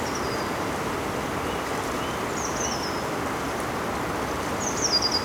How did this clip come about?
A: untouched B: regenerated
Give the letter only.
A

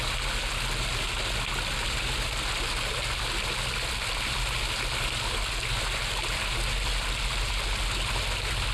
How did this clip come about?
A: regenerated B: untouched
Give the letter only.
B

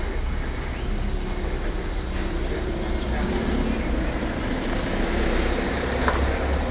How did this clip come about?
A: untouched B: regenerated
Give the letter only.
A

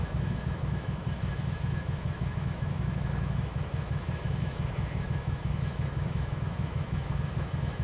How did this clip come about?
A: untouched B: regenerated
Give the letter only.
B